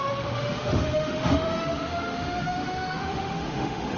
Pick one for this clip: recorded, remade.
remade